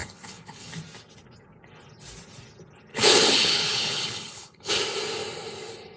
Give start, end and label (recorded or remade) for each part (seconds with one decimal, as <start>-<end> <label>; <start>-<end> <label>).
0.0-0.7 remade; 0.7-2.9 recorded; 2.9-4.7 remade; 4.7-6.0 recorded